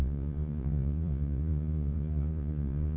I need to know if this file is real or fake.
fake